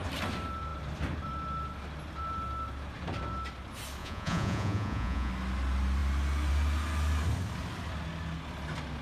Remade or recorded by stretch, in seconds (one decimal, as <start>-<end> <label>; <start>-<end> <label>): 0.0-4.0 recorded; 4.0-5.3 remade; 5.3-9.0 recorded